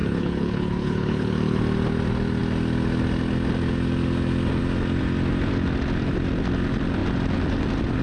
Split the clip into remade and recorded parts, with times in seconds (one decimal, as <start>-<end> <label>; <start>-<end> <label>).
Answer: 0.0-1.6 remade; 1.6-8.0 recorded